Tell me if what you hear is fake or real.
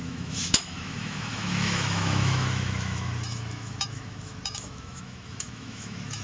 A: fake